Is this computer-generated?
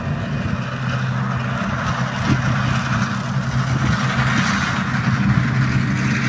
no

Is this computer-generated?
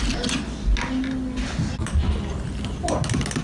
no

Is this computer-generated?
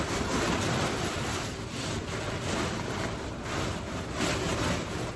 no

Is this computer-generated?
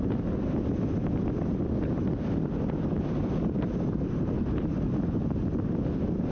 no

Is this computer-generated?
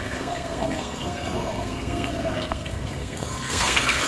yes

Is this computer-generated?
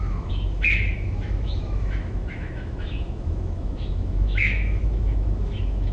yes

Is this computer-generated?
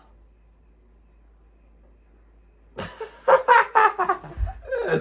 no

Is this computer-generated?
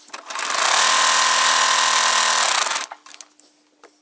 no